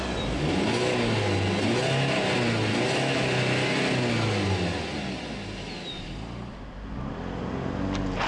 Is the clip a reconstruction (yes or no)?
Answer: no